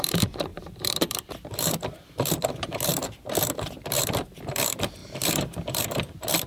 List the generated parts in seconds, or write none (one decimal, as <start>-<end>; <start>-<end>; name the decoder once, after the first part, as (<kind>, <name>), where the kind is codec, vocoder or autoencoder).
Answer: 0.0-6.5 (vocoder, BigVGAN v2)